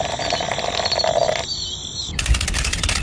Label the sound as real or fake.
real